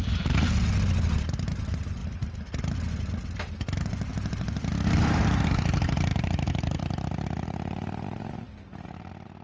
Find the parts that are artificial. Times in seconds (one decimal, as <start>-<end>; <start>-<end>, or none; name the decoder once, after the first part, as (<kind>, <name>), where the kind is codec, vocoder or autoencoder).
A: 4.1-5.2 (vocoder, BigVGAN v2); 6.1-6.8